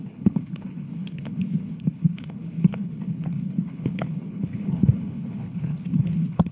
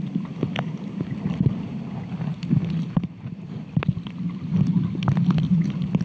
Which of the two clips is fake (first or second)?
first